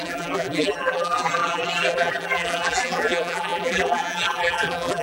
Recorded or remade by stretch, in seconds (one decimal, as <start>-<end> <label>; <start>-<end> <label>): 0.0-5.0 remade